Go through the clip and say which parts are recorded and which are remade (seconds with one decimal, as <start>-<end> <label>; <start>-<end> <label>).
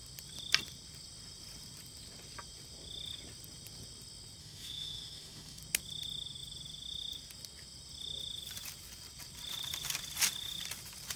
0.0-4.4 recorded; 4.4-5.6 remade; 5.6-11.2 recorded